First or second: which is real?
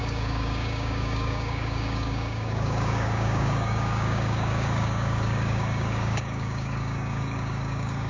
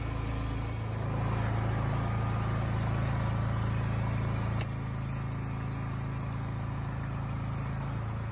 second